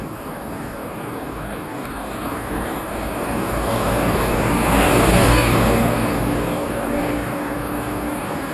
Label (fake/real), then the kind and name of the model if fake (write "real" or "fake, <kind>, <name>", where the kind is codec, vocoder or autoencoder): fake, codec, DAC